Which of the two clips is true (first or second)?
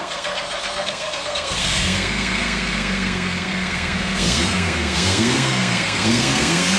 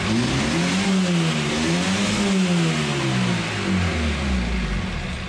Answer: second